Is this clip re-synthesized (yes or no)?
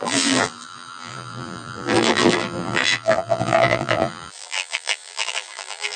yes